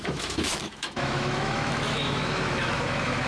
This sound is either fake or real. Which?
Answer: fake